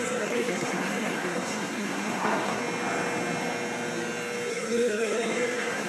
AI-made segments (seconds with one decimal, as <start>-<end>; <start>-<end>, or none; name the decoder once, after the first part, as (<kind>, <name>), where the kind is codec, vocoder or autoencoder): 0.0-2.6 (codec, SNAC); 4.5-5.9